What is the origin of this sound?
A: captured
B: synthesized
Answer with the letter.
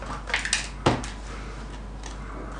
A